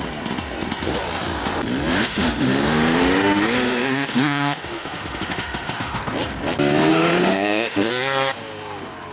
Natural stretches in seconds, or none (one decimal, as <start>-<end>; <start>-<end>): 0.0-1.9; 6.0-6.9; 7.9-9.1